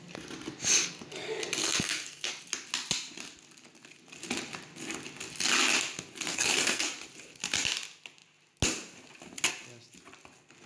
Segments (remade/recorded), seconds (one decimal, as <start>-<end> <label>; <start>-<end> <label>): 0.0-1.6 recorded; 1.6-2.3 remade; 2.3-6.3 recorded; 6.3-6.9 remade; 6.9-10.7 recorded